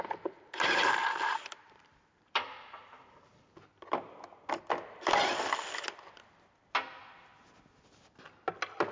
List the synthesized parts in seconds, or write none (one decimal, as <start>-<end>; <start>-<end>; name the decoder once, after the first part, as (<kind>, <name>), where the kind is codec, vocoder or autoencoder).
1.0-3.4 (vocoder, BigVGAN v2)